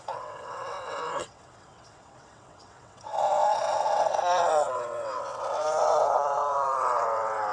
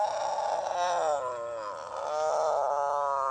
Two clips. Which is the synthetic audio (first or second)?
first